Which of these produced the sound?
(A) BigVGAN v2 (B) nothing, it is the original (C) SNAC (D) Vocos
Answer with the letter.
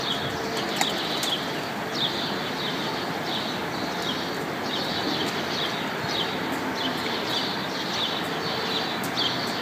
B